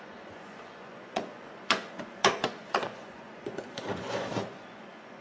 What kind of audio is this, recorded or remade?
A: remade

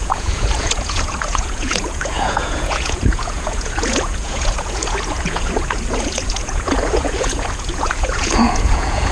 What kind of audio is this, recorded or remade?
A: remade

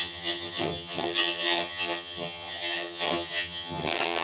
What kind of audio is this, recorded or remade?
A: remade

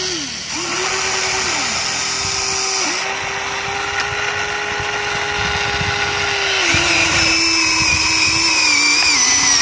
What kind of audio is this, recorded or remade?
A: recorded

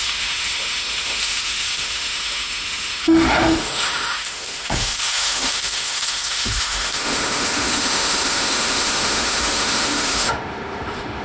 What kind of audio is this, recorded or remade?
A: remade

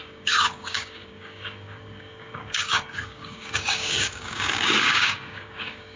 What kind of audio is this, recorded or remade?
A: remade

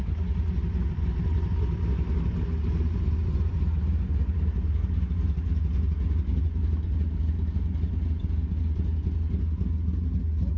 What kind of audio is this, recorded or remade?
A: recorded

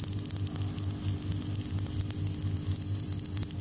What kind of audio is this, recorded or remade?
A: recorded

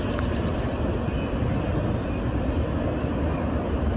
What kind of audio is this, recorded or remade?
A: recorded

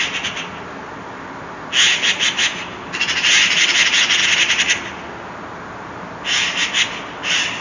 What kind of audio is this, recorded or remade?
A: recorded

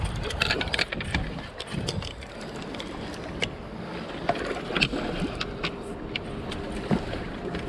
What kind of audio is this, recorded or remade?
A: recorded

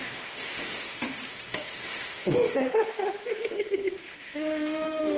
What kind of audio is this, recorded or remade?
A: remade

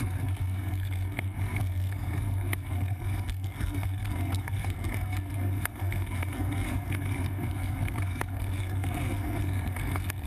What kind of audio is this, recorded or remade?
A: remade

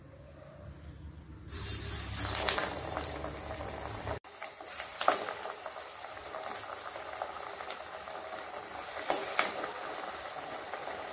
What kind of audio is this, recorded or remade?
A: recorded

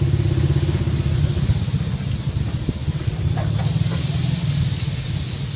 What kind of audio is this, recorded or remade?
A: recorded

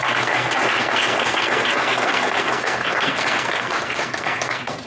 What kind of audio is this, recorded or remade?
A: remade